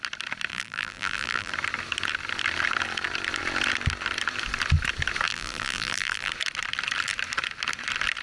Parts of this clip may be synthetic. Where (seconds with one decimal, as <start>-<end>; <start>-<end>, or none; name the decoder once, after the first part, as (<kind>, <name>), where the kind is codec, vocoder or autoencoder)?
0.5-1.5 (vocoder, BigVGAN v2); 5.3-6.3